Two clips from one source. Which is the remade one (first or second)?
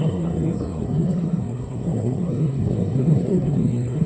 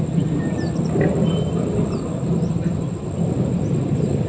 first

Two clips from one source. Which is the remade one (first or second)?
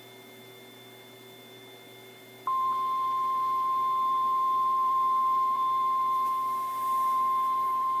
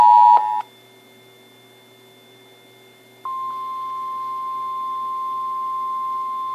first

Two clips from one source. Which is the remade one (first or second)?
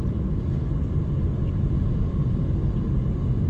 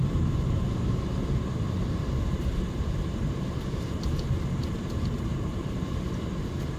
second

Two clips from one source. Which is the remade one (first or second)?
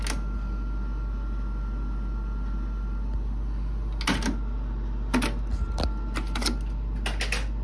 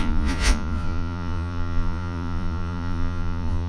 second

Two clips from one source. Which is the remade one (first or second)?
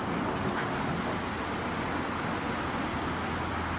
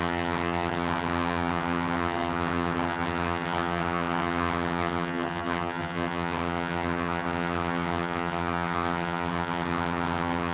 second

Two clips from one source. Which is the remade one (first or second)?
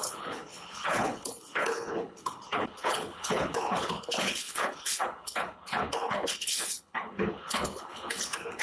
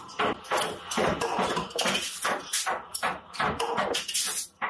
first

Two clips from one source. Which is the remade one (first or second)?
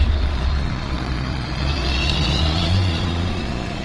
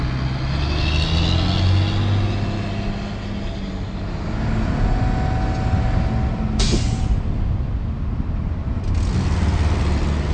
first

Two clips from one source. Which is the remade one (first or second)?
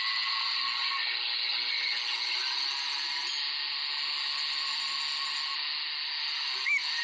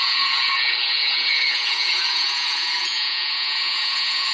second